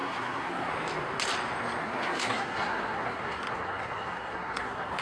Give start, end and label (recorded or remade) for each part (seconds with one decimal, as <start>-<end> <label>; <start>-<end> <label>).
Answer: 0.0-0.7 remade; 0.7-1.8 recorded; 1.8-5.0 remade